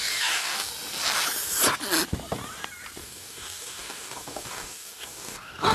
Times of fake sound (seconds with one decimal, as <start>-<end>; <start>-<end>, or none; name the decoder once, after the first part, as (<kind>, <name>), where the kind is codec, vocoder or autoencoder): 0.0-0.7 (codec, DAC); 3.0-5.7